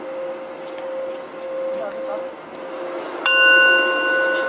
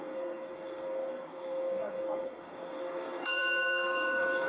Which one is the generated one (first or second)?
second